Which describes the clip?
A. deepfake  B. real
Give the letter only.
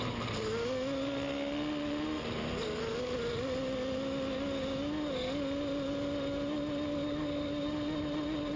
B